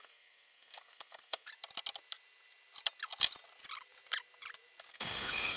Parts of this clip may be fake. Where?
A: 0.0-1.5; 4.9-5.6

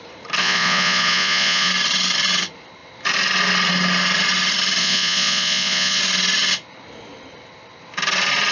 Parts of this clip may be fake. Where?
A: 0.4-1.7; 4.8-6.0

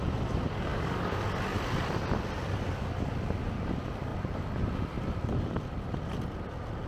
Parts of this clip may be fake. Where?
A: 0.7-1.2

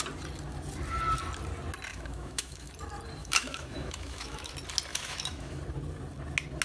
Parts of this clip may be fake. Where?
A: 1.9-2.7; 3.2-4.5; 4.9-5.6

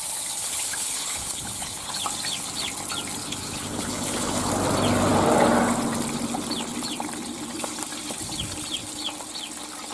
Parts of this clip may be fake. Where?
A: 0.4-1.9; 3.2-4.5

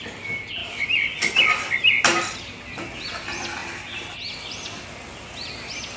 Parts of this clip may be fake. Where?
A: none

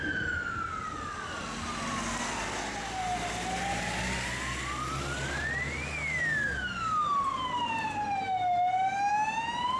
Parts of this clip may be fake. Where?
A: 7.1-8.2